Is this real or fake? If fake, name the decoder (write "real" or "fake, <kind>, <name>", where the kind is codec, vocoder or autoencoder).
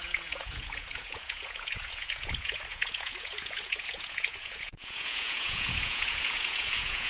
fake, vocoder, Vocos